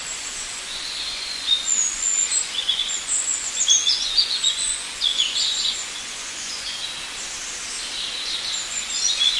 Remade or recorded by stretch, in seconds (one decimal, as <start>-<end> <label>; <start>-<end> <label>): 0.0-6.8 remade; 6.8-8.7 recorded; 8.7-9.4 remade